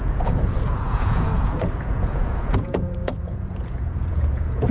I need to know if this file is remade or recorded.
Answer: remade